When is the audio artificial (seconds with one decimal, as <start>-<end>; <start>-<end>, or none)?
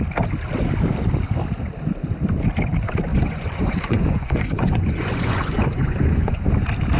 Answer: 3.1-6.5